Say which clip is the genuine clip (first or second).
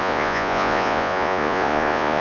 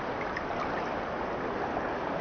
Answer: second